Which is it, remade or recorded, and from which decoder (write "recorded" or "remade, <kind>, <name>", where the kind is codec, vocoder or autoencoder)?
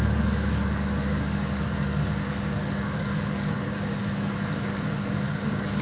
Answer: remade, codec, DAC